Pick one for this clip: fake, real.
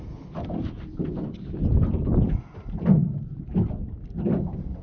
real